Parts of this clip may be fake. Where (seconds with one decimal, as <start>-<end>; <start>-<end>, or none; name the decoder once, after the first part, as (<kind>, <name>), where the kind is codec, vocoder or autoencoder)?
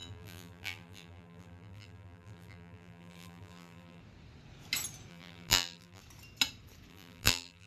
0.0-4.0 (vocoder, BigVGAN v2); 5.1-6.0; 6.9-7.7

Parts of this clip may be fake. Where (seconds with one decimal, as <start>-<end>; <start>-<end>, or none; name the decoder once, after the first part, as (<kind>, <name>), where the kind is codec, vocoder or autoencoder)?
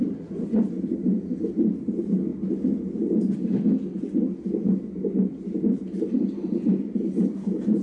0.0-2.3 (vocoder, BigVGAN v2); 5.6-7.8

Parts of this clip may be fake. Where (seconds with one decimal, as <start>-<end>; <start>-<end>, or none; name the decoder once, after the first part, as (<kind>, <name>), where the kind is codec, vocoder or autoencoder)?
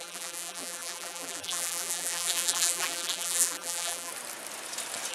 0.0-4.1 (vocoder, BigVGAN v2)